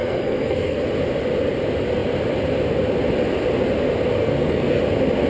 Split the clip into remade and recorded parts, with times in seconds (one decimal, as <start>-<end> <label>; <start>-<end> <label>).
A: 0.0-0.8 remade; 0.8-4.2 recorded; 4.2-4.8 remade; 4.8-5.3 recorded

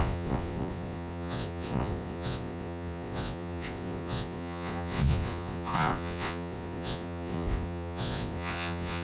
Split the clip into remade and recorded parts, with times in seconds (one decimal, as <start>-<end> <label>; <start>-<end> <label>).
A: 0.0-9.0 remade

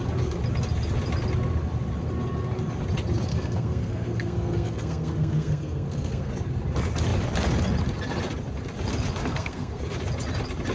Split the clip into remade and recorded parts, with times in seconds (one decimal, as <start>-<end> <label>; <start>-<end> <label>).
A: 0.0-3.3 recorded; 3.3-6.3 remade; 6.3-9.2 recorded; 9.2-9.8 remade; 9.8-10.7 recorded

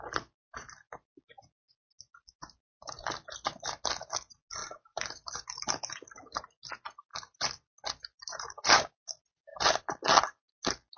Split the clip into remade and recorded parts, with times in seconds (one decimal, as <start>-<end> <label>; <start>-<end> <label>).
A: 0.0-4.6 recorded; 4.6-5.6 remade; 5.6-7.1 recorded; 7.1-8.9 remade; 8.9-11.0 recorded

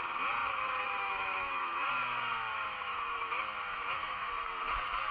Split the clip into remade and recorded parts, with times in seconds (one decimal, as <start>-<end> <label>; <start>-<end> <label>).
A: 0.0-0.4 recorded; 0.4-1.9 remade; 1.9-2.5 recorded; 2.5-4.3 remade; 4.3-5.1 recorded

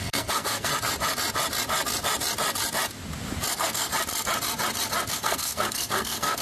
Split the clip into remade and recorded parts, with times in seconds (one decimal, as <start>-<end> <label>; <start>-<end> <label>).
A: 0.0-0.7 remade; 0.7-3.5 recorded; 3.5-3.9 remade; 3.9-5.1 recorded; 5.1-6.4 remade

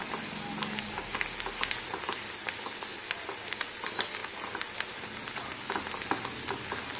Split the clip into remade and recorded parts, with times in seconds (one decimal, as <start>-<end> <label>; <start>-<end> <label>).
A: 0.0-2.9 recorded; 2.9-3.5 remade; 3.5-7.0 recorded

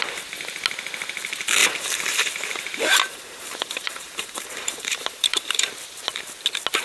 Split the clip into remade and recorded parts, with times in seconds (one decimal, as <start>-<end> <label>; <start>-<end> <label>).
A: 0.0-1.6 recorded; 1.6-5.7 remade; 5.7-6.8 recorded